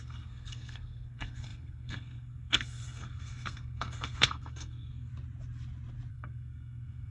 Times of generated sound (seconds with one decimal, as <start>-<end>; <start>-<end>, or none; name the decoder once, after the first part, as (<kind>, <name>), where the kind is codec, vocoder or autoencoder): 0.0-5.1 (codec, SNAC); 6.1-7.1